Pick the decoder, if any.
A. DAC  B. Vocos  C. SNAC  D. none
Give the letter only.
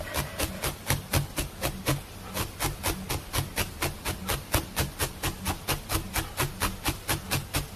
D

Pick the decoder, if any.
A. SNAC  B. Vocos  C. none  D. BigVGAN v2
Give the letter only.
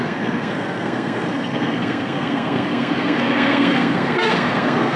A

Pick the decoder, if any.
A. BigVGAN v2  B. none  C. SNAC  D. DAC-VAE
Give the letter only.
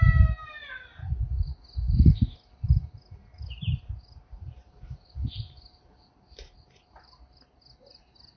B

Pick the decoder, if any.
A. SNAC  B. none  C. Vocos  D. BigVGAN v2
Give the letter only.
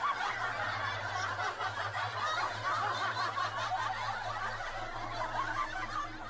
B